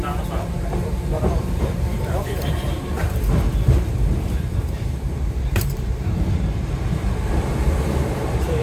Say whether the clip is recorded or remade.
remade